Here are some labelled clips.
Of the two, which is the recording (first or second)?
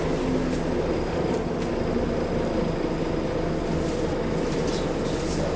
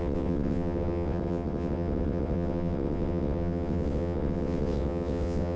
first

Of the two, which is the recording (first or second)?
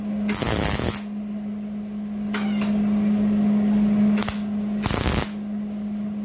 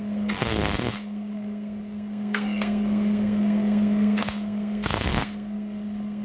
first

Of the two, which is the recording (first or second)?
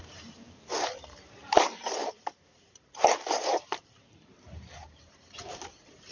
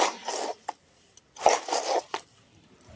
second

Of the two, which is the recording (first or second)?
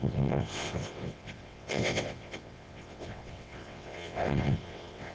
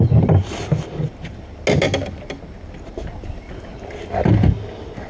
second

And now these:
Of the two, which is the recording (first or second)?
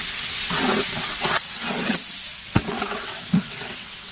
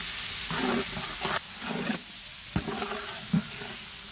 second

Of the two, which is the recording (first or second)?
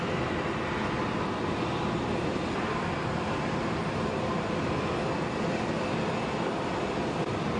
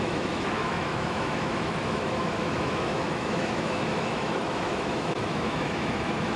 first